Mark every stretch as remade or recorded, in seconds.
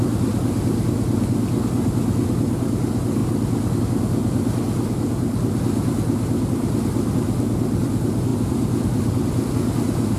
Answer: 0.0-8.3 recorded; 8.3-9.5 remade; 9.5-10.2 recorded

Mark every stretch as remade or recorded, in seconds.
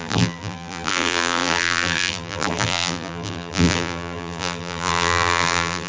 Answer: 0.0-5.9 remade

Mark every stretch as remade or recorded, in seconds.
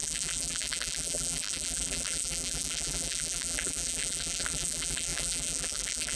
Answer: 0.0-6.2 remade